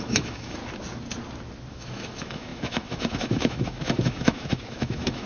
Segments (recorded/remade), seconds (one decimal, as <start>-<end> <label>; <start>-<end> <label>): 0.0-0.6 remade; 0.6-1.7 recorded; 1.7-5.3 remade